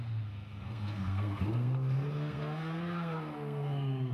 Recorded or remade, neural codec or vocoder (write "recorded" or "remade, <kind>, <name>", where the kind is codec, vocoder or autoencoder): remade, codec, SNAC